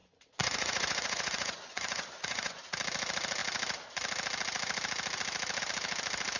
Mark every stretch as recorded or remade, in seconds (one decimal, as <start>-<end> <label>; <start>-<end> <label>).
0.0-2.6 remade; 2.6-6.4 recorded